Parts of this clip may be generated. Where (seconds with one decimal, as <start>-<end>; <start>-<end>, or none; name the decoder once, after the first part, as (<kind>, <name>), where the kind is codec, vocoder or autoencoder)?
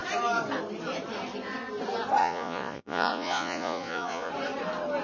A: 2.2-4.3 (vocoder, Vocos)